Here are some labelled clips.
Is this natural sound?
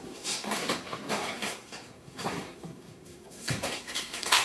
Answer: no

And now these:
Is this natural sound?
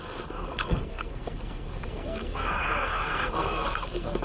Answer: no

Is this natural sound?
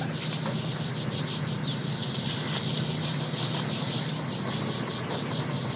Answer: yes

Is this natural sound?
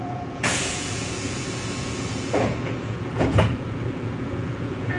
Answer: no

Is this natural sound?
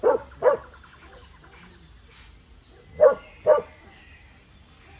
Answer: yes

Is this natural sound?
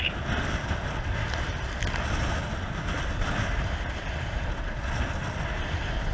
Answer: yes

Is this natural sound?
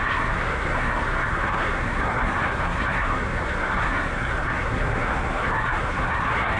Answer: no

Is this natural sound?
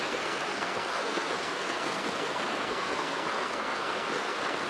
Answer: no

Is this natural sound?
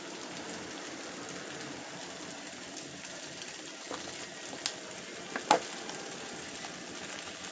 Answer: yes